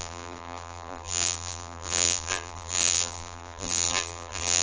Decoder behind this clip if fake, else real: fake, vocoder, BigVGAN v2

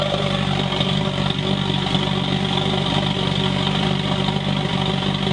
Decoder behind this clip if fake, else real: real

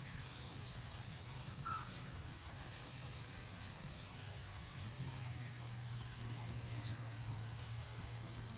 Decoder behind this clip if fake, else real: fake, codec, SNAC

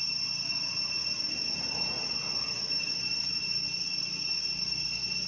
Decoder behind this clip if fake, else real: real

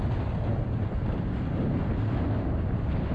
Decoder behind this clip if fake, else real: real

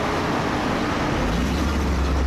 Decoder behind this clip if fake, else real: real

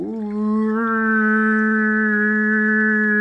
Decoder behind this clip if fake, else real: real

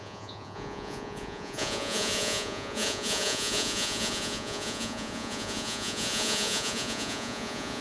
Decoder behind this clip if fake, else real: fake, vocoder, Vocos